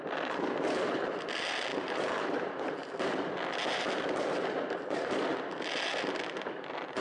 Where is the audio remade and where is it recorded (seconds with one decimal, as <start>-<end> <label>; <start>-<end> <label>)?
0.0-7.0 recorded